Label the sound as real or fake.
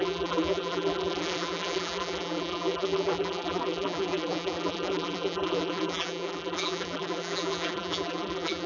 fake